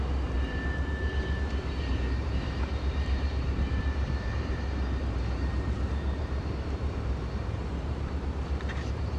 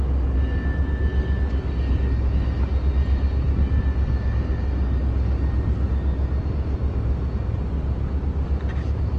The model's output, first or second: first